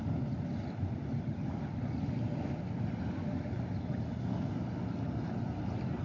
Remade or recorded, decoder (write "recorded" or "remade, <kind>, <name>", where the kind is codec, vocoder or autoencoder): recorded